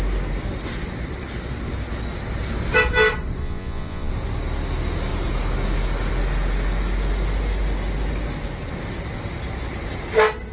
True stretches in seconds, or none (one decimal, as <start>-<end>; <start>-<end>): 0.0-3.4; 4.1-10.5